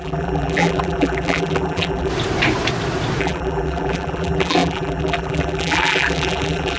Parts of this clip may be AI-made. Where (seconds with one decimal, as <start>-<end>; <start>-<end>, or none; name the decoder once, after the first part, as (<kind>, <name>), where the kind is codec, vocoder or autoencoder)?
0.0-2.1 (vocoder, BigVGAN v2); 3.2-6.8